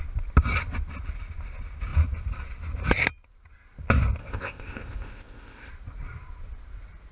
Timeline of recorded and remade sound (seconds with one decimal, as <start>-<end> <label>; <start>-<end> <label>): 0.0-4.2 recorded; 4.2-5.7 remade; 5.7-7.1 recorded